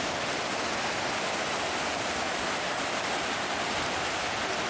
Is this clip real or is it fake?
real